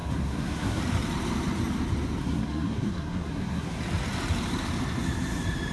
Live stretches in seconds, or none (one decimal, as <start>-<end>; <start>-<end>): 0.8-2.2; 3.8-5.7